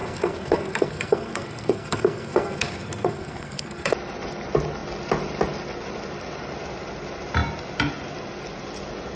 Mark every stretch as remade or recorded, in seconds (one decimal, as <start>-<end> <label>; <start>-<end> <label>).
0.0-3.9 remade; 3.9-9.2 recorded

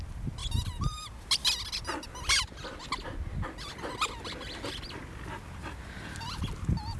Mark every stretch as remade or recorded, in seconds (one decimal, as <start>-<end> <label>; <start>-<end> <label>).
0.0-7.0 recorded

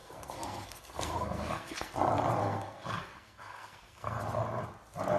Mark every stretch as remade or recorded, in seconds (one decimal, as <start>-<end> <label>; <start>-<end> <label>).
0.0-1.9 remade; 1.9-2.4 recorded; 2.4-4.2 remade; 4.2-5.2 recorded

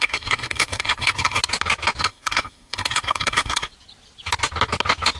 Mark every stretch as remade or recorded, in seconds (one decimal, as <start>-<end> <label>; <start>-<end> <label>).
0.0-1.4 remade; 1.4-2.0 recorded; 2.0-3.7 remade; 3.7-5.2 recorded

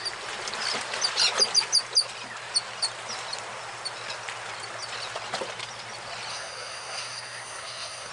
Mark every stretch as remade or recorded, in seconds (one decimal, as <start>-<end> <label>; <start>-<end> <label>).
0.0-6.3 recorded; 6.3-8.1 remade

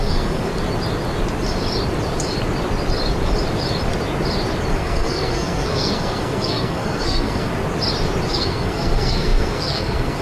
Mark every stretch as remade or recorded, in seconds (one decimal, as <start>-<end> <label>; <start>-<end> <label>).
0.0-0.5 remade; 0.5-4.7 recorded; 4.7-7.5 remade; 7.5-8.3 recorded; 8.3-10.2 remade

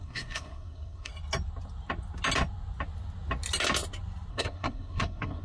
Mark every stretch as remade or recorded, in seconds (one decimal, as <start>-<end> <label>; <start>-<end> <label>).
0.0-1.1 remade; 1.1-4.3 recorded; 4.3-5.4 remade

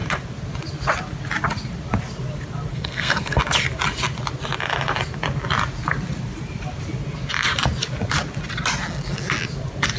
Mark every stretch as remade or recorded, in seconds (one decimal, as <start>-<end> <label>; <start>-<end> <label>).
0.0-2.7 recorded; 2.7-3.4 remade; 3.4-10.0 recorded